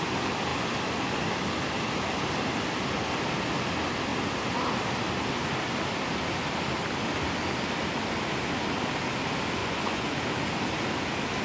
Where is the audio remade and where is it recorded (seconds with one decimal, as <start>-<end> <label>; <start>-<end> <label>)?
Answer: 0.0-9.6 recorded; 9.6-10.1 remade; 10.1-11.4 recorded